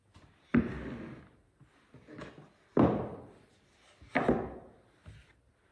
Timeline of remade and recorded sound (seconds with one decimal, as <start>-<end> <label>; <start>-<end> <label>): 0.0-5.7 recorded